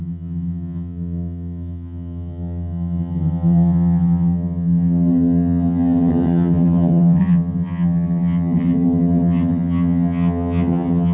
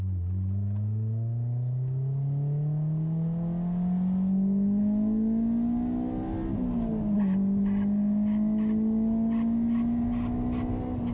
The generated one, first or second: first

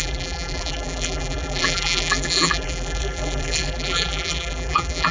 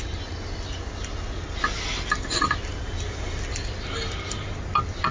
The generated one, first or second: first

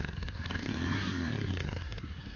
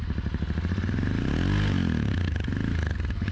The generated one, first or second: first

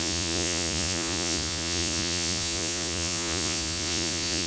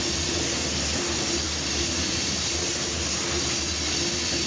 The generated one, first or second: first